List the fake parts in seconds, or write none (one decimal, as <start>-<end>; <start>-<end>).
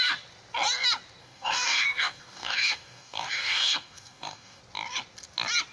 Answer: 1.2-4.6